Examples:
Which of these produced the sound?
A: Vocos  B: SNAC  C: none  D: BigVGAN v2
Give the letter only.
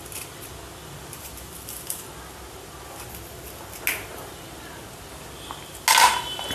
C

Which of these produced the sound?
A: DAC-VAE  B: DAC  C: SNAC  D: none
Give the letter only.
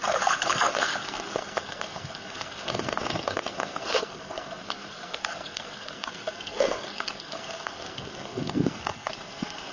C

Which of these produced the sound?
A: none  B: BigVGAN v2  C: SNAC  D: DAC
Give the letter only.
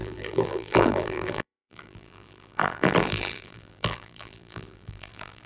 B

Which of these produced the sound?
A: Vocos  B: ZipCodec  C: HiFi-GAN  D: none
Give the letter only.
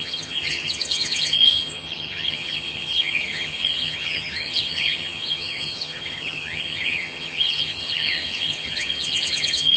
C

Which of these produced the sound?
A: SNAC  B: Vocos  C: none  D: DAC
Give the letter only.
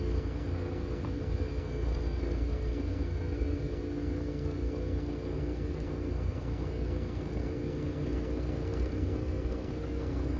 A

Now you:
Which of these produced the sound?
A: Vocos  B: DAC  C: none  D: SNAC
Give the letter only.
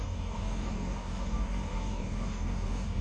B